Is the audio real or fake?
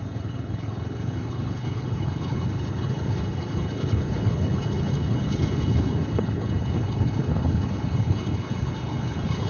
fake